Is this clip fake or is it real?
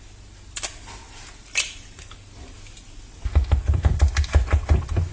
real